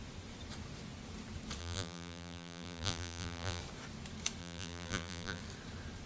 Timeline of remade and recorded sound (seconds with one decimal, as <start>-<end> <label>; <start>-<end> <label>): 0.0-1.6 recorded; 1.6-3.6 remade; 3.6-4.4 recorded; 4.4-5.4 remade; 5.4-6.1 recorded